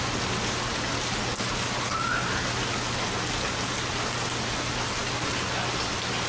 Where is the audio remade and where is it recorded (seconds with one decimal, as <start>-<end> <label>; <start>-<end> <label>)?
0.0-6.3 recorded